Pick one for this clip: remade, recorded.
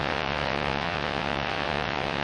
remade